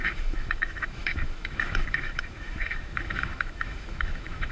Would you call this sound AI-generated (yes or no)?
yes